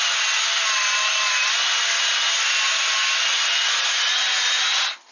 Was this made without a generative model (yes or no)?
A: yes